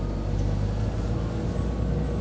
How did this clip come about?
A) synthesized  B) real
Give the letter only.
B